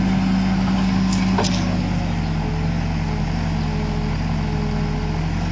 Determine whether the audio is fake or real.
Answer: real